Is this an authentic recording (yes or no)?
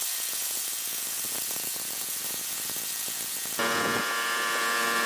no